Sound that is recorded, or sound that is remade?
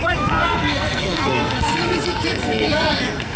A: remade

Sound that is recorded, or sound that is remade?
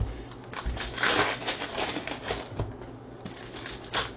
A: recorded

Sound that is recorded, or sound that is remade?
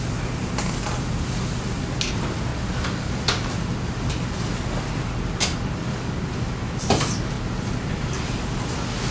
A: recorded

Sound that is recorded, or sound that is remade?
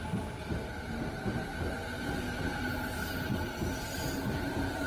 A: recorded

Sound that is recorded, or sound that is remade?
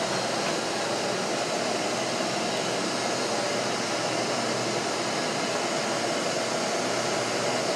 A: recorded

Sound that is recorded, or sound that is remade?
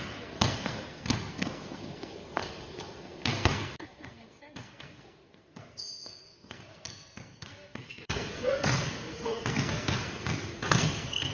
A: remade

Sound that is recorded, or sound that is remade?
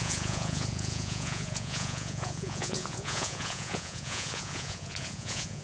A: remade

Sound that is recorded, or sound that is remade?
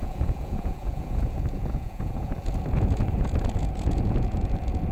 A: remade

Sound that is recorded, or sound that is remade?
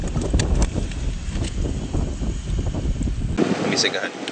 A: recorded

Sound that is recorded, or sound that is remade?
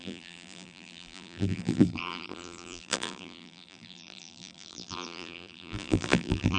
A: remade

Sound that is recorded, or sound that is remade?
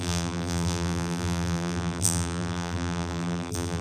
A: remade